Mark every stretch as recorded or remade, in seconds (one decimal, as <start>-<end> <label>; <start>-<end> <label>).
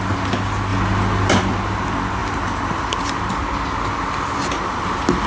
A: 0.0-5.3 recorded